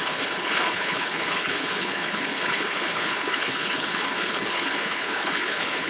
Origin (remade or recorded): remade